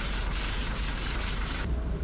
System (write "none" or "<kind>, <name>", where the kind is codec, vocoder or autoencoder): vocoder, BigVGAN v2